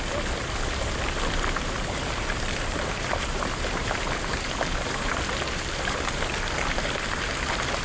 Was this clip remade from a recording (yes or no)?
yes